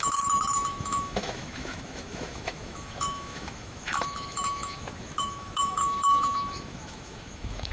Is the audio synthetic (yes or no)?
yes